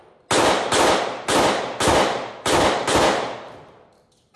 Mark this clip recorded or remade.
recorded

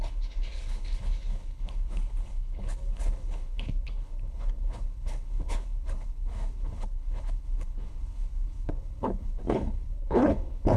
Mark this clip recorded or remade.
remade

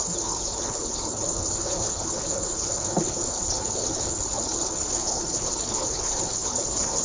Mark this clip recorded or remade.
remade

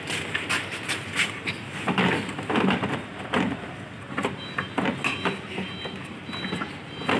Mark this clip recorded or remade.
recorded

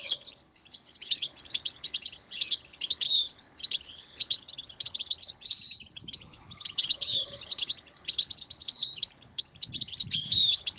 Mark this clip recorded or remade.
remade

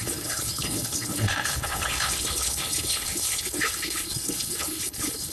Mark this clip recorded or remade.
remade